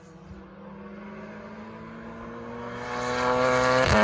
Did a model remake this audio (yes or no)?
no